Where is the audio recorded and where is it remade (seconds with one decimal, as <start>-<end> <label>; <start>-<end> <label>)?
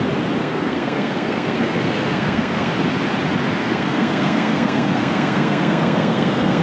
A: 0.0-0.4 recorded; 0.4-2.7 remade; 2.7-3.6 recorded; 3.6-6.6 remade